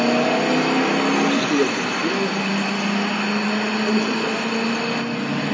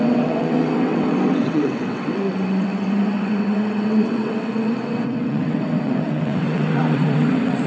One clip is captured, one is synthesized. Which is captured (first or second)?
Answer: first